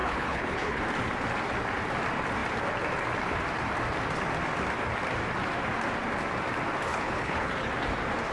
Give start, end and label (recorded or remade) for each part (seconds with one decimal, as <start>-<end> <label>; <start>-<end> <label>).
0.0-0.8 remade; 0.8-6.9 recorded; 6.9-7.7 remade; 7.7-8.3 recorded